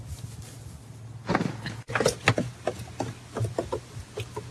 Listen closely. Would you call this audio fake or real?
real